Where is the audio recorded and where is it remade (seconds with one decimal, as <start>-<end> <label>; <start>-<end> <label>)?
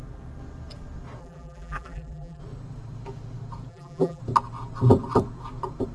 0.0-1.2 recorded; 1.2-2.4 remade; 2.4-3.7 recorded; 3.7-4.2 remade; 4.2-5.9 recorded